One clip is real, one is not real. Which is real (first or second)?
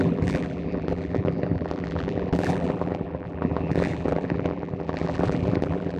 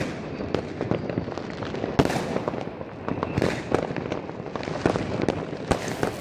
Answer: second